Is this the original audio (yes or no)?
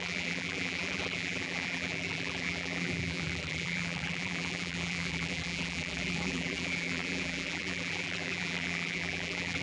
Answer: no